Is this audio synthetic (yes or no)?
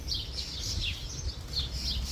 no